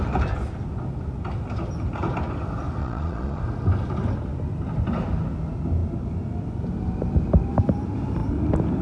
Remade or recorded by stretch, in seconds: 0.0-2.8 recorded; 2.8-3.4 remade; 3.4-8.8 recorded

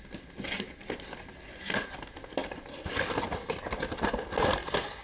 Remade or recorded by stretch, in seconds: 0.0-5.0 recorded

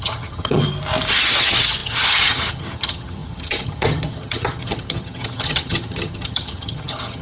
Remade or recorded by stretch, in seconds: 0.0-0.6 remade; 0.6-1.1 recorded; 1.1-7.2 remade

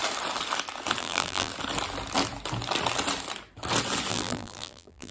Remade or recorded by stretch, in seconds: 0.0-1.0 recorded; 1.0-1.5 remade; 1.5-4.1 recorded; 4.1-5.1 remade

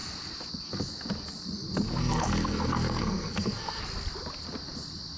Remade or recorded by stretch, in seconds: 0.0-2.0 recorded; 2.0-3.8 remade; 3.8-5.2 recorded

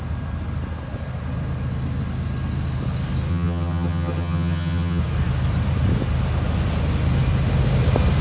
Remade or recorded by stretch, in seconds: 0.0-3.3 recorded; 3.3-5.0 remade; 5.0-8.2 recorded